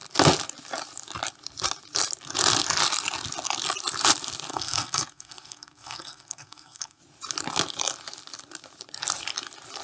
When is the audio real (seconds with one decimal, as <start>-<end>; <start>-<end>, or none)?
0.0-4.5; 7.0-9.8